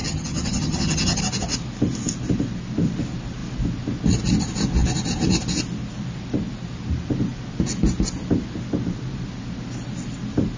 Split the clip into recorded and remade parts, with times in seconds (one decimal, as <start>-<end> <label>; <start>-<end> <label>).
0.0-1.2 remade; 1.2-10.6 recorded